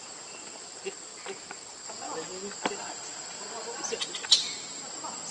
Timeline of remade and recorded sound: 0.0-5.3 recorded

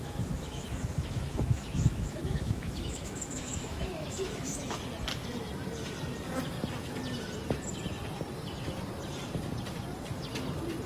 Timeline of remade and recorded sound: 0.0-4.8 remade; 4.8-10.9 recorded